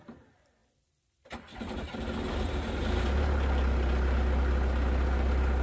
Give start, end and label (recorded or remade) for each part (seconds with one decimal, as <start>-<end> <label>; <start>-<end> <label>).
0.0-5.6 recorded